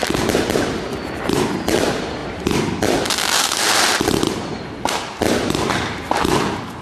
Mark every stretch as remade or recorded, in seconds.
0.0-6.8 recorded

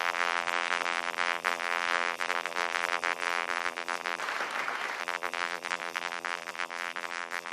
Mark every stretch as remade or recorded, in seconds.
0.0-4.2 remade; 4.2-5.0 recorded; 5.0-7.5 remade

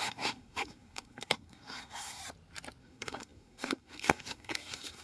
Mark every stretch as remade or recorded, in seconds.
0.0-2.2 remade; 2.2-2.8 recorded; 2.8-5.0 remade

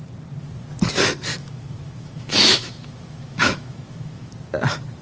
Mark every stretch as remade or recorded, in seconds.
0.0-1.3 recorded; 1.3-4.3 remade; 4.3-5.0 recorded

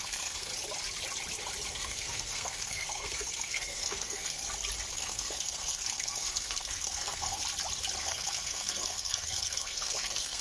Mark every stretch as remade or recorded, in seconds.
0.0-0.5 remade; 0.5-1.7 recorded; 1.7-4.4 remade; 4.4-4.9 recorded; 4.9-7.4 remade; 7.4-8.0 recorded; 8.0-10.4 remade